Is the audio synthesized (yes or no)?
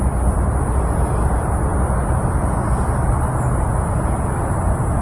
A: no